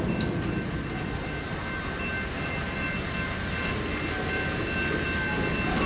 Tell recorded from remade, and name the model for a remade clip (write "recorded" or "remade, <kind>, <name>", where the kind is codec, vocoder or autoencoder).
recorded